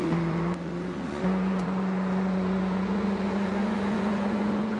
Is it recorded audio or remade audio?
remade